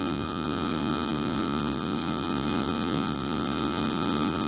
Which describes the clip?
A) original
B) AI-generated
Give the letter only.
B